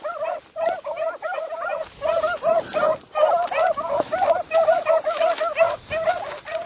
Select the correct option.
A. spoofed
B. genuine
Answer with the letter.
B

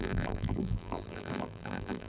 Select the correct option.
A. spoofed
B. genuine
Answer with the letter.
A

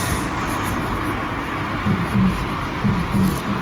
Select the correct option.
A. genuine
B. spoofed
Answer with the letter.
A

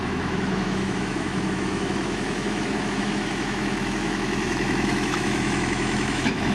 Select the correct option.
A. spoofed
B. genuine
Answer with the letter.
A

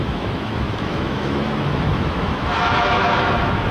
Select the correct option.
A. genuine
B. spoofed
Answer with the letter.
B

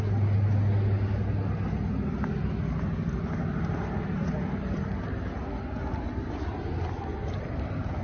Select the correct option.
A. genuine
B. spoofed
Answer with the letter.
A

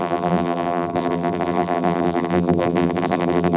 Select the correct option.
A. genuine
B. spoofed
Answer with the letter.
B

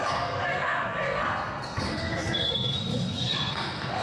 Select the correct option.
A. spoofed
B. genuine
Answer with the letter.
A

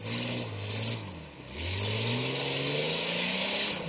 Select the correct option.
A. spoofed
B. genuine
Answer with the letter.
B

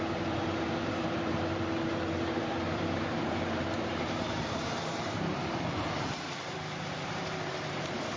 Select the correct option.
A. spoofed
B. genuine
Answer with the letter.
A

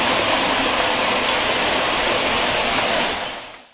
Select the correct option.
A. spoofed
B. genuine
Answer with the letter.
B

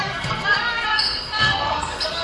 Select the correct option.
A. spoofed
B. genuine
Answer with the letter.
A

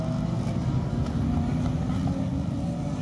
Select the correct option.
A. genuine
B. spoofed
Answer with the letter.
A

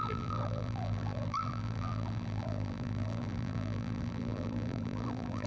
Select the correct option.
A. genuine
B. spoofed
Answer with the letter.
B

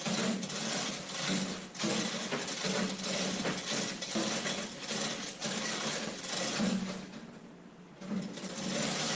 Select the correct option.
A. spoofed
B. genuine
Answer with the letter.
B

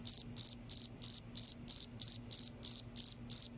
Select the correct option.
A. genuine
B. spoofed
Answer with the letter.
A